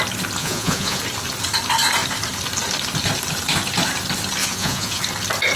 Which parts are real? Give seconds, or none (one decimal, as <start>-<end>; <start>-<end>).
0.0-0.4; 1.0-4.4; 5.0-5.6